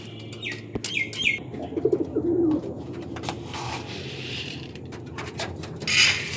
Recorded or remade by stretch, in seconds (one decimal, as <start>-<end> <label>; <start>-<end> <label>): 0.0-2.6 recorded; 2.6-5.8 remade; 5.8-6.4 recorded